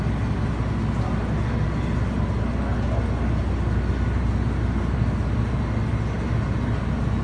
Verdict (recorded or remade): recorded